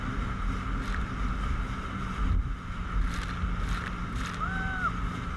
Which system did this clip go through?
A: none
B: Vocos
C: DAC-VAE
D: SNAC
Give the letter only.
A